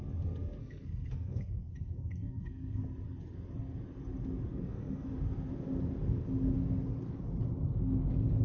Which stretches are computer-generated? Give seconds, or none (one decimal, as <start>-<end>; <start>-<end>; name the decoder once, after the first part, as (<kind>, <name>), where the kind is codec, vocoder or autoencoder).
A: 0.6-2.8 (codec, SNAC); 4.5-5.1